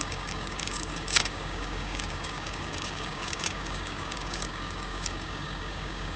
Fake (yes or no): yes